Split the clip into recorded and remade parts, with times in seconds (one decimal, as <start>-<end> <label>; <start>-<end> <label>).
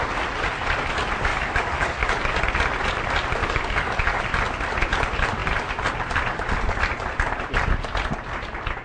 0.0-1.3 recorded; 1.3-2.4 remade; 2.4-3.4 recorded; 3.4-4.2 remade; 4.2-8.8 recorded